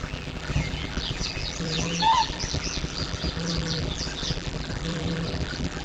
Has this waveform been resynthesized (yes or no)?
yes